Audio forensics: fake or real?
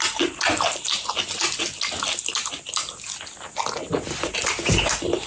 real